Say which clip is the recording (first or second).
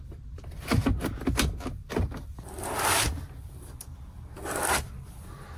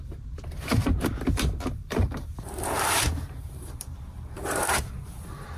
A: first